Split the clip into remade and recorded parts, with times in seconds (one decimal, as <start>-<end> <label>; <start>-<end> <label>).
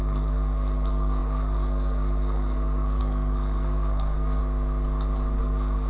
0.0-4.4 remade; 4.4-5.4 recorded; 5.4-5.9 remade